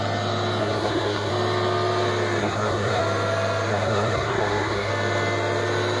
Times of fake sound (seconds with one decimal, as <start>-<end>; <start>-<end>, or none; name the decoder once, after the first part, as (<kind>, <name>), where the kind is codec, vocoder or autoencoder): 0.6-1.3 (codec, SNAC); 2.4-3.0; 3.7-4.9